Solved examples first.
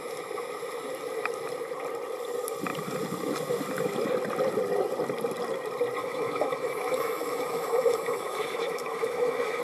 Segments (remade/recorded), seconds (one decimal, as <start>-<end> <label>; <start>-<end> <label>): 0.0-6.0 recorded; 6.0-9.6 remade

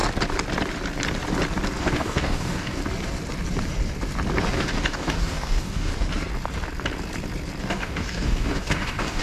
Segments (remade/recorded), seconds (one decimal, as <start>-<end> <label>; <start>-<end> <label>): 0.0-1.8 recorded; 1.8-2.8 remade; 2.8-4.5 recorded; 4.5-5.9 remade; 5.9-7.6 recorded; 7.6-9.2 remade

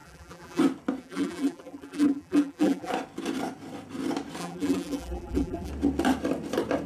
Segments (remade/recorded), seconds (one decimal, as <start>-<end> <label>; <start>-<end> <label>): 0.0-0.6 remade; 0.6-1.0 recorded; 1.0-2.9 remade; 2.9-4.4 recorded; 4.4-5.7 remade; 5.7-6.9 recorded

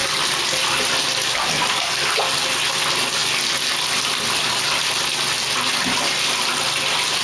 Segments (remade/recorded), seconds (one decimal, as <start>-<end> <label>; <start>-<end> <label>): 0.0-7.2 recorded

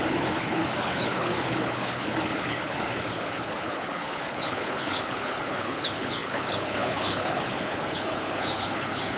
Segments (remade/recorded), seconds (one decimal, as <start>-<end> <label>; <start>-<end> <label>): 0.0-9.2 remade